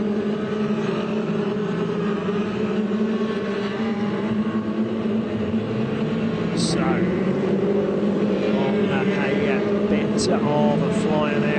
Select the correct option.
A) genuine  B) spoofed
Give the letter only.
A